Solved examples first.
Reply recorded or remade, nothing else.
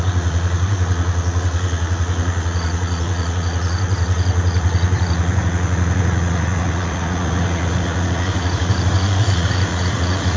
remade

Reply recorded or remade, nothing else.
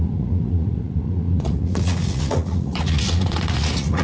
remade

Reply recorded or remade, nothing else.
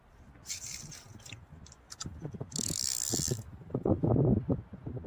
recorded